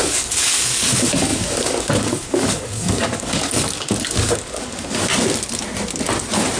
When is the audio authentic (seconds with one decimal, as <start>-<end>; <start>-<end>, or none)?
5.1-6.6

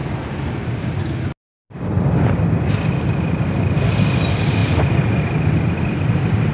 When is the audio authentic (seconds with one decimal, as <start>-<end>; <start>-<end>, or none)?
0.0-6.5

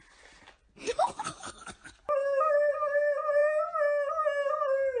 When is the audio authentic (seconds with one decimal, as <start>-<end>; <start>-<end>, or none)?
0.0-1.0; 2.7-5.0

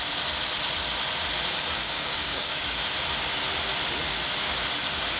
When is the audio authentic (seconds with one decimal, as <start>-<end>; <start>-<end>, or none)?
0.0-1.8; 2.8-5.2

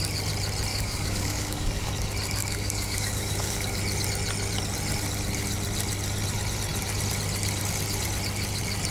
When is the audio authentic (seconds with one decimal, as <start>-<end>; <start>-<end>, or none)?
0.0-0.7; 1.9-2.4; 3.8-8.9

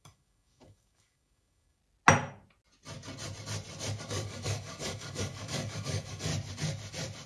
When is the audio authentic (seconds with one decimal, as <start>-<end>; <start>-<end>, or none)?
1.8-4.0; 6.3-7.3

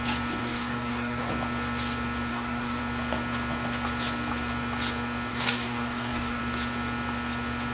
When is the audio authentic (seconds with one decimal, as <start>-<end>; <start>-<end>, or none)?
0.0-0.4; 1.3-2.3; 2.8-5.3; 6.4-7.7

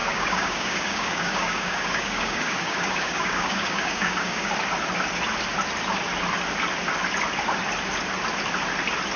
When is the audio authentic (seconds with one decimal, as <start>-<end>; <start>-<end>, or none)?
4.5-9.2